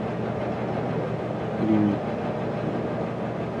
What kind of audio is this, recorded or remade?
recorded